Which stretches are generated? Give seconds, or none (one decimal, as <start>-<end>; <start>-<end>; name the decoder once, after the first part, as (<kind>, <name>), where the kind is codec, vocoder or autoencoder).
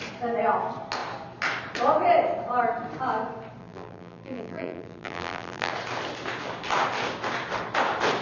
3.6-5.7 (vocoder, BigVGAN v2)